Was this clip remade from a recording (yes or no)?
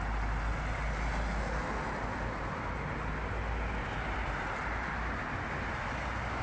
no